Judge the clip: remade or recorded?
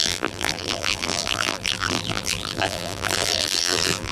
remade